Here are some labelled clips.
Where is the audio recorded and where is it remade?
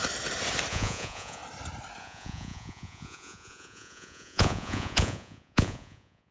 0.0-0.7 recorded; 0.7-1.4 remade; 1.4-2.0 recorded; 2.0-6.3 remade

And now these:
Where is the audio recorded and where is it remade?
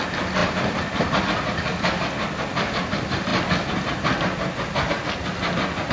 0.0-5.9 recorded